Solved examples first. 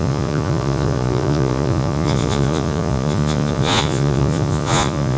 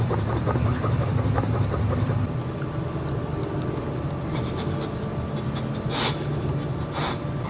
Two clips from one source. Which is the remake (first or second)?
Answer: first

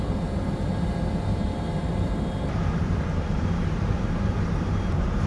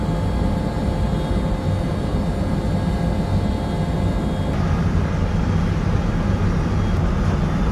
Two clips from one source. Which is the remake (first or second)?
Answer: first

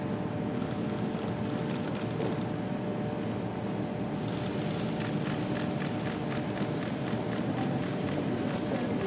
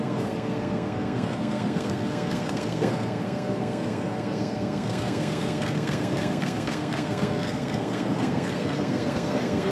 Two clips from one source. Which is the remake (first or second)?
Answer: second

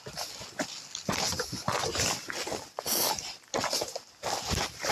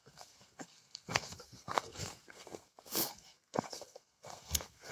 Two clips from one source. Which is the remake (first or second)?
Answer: second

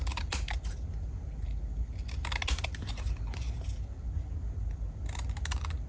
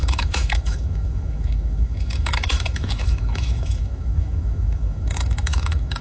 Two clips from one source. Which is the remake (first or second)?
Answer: second